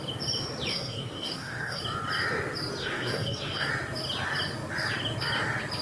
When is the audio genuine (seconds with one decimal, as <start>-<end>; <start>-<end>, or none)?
0.0-0.7; 1.8-2.8; 3.7-5.8